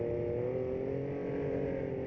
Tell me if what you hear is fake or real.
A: real